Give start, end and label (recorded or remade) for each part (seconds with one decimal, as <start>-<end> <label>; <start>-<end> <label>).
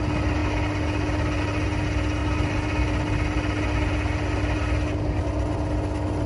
0.0-6.3 recorded